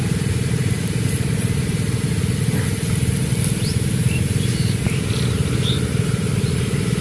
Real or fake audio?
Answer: fake